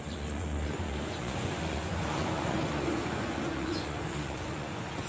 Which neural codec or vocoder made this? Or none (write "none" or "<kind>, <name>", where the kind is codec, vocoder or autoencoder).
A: vocoder, Vocos